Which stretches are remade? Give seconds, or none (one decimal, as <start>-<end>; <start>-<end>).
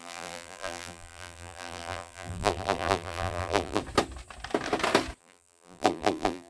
0.0-3.8; 5.2-6.5